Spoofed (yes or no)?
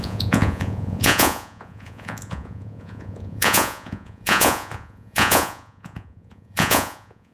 yes